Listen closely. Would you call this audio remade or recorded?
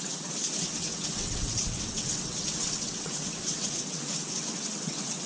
remade